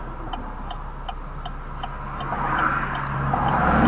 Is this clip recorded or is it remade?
recorded